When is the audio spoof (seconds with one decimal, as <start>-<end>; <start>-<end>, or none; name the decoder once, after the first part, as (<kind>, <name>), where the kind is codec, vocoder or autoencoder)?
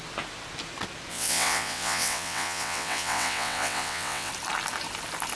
1.1-4.3 (vocoder, WaveNeXt)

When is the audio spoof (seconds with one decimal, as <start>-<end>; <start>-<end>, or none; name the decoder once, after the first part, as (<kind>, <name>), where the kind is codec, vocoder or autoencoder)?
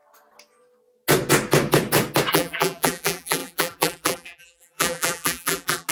2.3-5.9 (vocoder, BigVGAN v2)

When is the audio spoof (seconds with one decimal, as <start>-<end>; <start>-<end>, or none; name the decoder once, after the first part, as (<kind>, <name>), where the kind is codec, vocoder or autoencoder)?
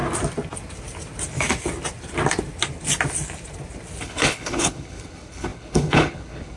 4.0-6.6 (codec, HILCodec)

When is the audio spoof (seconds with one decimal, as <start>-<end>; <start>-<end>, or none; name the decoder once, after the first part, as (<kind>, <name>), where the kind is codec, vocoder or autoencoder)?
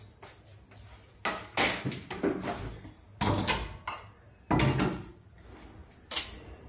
none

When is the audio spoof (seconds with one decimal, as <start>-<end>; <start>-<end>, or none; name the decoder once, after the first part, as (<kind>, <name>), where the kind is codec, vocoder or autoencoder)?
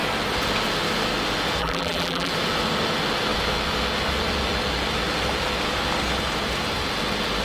1.6-2.3 (vocoder, BigVGAN v2)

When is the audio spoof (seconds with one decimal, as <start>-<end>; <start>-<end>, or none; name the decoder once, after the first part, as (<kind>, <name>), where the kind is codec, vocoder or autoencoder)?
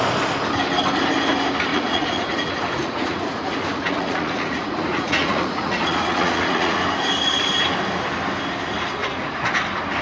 1.7-6.8 (vocoder, Vocos); 9.0-9.6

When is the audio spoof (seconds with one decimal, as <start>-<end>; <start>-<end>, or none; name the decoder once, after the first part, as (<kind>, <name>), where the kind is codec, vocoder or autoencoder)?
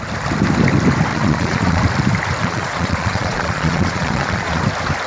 1.1-1.8 (vocoder, Vocos); 2.4-4.6